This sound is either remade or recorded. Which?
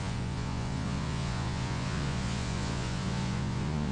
remade